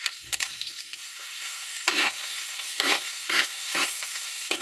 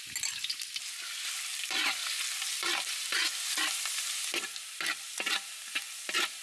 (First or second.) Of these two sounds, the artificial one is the first